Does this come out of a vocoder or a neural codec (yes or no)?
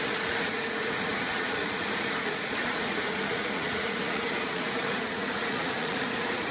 yes